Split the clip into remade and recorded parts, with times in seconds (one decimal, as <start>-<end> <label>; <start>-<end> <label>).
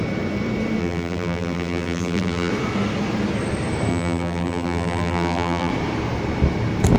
0.0-0.8 recorded; 0.8-2.5 remade; 2.5-3.9 recorded; 3.9-5.7 remade; 5.7-7.0 recorded